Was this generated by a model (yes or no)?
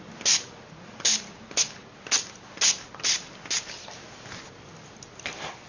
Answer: no